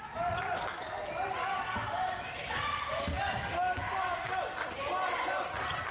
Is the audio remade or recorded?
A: recorded